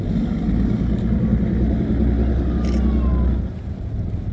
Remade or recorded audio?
recorded